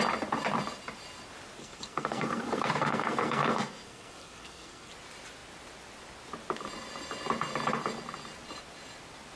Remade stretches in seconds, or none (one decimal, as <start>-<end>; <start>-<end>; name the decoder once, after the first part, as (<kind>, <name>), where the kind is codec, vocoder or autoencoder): 1.6-4.9 (codec, SNAC)